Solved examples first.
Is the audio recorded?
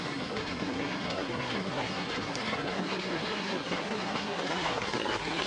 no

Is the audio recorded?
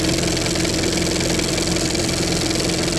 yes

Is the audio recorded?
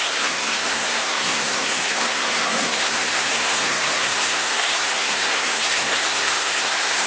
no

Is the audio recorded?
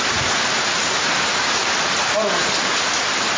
yes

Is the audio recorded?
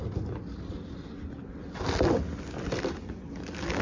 yes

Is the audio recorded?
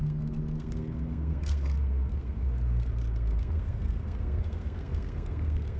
no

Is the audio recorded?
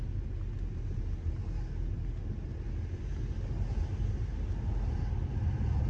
yes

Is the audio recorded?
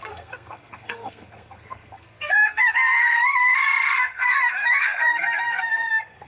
no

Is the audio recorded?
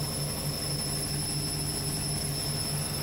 yes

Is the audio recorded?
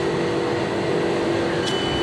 yes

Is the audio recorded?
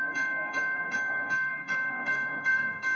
no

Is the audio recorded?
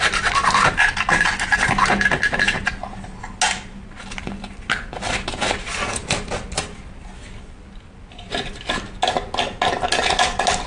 yes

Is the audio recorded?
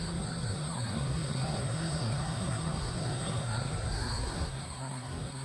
no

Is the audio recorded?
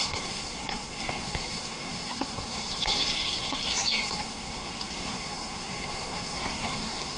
no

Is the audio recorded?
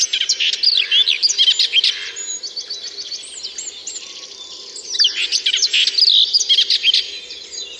yes